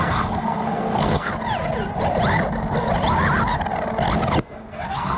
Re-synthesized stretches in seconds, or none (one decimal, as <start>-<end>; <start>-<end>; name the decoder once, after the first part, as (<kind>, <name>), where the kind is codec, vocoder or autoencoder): 0.0-1.3 (codec, SNAC); 4.4-5.2